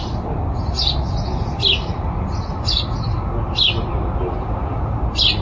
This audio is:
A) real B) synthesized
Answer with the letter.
A